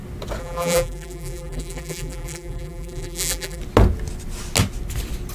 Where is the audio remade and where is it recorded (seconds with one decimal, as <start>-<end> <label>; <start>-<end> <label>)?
0.0-0.4 recorded; 0.4-3.6 remade; 3.6-5.3 recorded

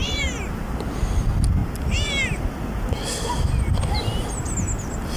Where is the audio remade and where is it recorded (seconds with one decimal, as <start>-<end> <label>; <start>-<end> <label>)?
0.0-1.0 remade; 1.0-1.6 recorded; 1.6-2.4 remade; 2.4-5.2 recorded

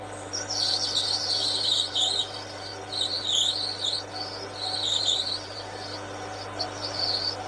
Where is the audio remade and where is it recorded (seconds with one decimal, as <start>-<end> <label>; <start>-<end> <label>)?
0.0-2.7 remade; 2.7-4.9 recorded; 4.9-5.9 remade; 5.9-6.6 recorded; 6.6-7.5 remade

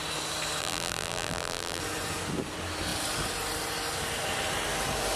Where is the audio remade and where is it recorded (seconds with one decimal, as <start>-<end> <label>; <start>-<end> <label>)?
0.0-0.6 recorded; 0.6-1.8 remade; 1.8-5.2 recorded